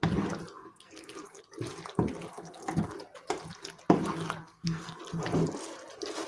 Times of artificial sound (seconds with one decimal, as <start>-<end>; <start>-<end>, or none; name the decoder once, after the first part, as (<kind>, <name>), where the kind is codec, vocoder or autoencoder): 0.6-1.4 (codec, SNAC); 2.3-2.9; 4.4-5.0